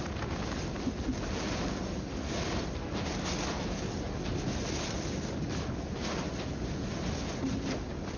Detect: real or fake real